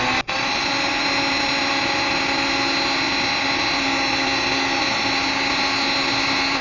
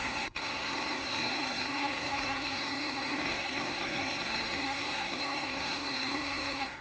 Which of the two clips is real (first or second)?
first